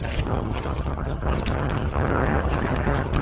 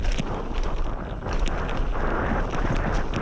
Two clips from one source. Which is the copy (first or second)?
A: first